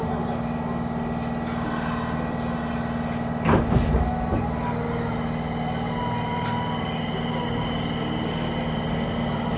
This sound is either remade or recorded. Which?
recorded